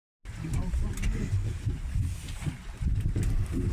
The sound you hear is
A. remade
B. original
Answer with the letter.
B